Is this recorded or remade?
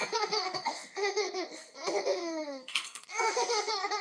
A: remade